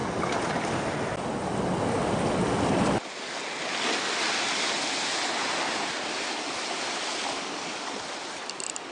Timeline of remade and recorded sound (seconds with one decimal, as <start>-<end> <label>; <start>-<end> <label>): 0.0-8.9 recorded